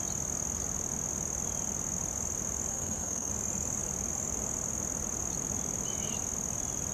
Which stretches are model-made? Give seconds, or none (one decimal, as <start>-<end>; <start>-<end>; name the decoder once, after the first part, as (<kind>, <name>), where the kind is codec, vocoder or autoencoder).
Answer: 2.7-3.3 (codec, SNAC)

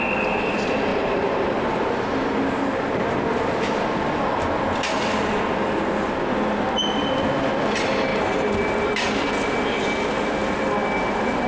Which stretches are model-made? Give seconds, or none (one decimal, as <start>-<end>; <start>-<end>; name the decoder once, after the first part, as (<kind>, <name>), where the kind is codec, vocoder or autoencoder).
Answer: 0.9-1.6 (vocoder, BigVGAN v2)